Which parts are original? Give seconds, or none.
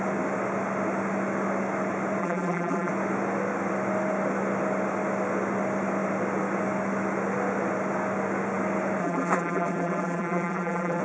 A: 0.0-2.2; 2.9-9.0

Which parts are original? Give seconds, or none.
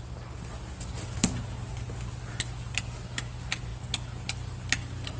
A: 0.0-5.2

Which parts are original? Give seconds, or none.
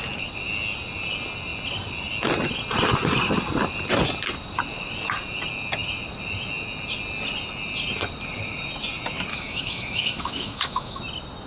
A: 0.0-9.3; 11.0-11.5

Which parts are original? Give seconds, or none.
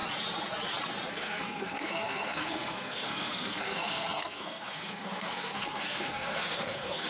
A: 0.0-1.1